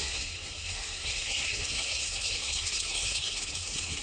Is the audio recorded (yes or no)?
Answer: no